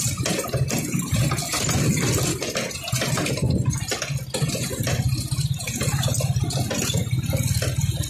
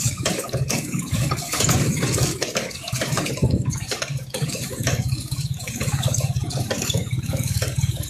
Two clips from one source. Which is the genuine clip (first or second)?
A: first